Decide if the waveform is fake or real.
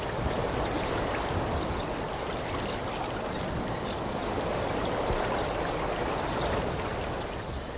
real